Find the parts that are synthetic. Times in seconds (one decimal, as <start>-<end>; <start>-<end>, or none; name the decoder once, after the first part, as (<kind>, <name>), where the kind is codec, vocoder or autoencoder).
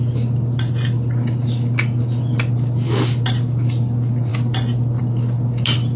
none